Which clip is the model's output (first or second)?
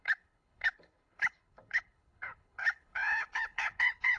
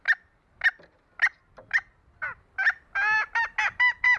first